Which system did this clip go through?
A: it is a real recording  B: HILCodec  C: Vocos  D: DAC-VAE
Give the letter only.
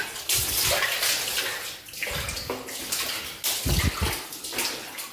A